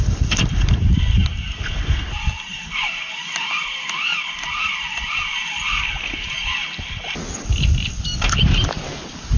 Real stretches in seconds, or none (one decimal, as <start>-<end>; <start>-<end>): 0.0-9.4